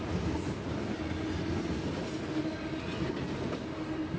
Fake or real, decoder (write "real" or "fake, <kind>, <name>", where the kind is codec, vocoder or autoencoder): real